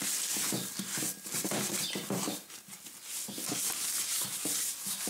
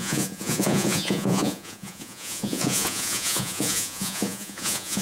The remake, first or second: second